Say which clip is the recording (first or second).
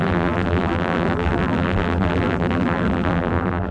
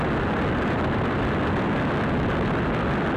second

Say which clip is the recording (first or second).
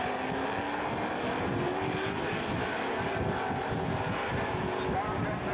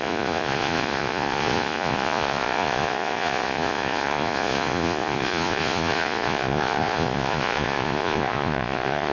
first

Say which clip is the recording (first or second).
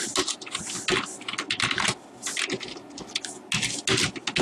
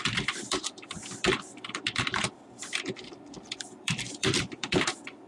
first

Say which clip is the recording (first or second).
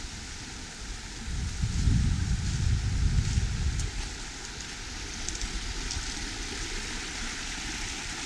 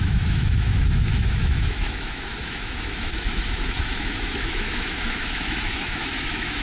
first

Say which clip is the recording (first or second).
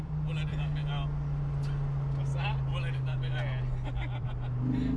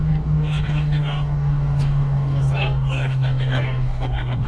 first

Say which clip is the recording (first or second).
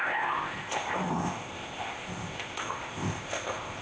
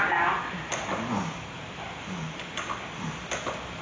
second